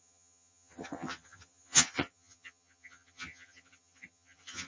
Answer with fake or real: fake